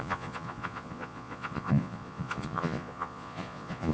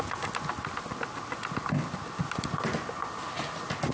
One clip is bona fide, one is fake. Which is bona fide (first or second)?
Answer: second